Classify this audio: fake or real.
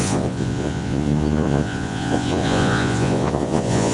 fake